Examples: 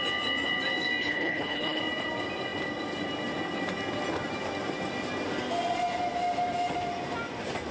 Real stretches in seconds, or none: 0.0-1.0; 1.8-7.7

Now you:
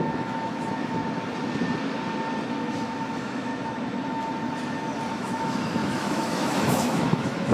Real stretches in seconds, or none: 1.0-2.5; 3.5-5.1

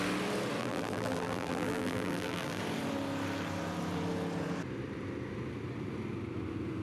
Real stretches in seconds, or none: 0.0-0.6; 2.6-6.8